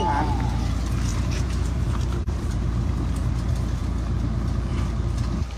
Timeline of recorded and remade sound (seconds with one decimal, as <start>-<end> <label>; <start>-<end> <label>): 0.0-1.1 recorded; 1.1-2.6 remade; 2.6-5.6 recorded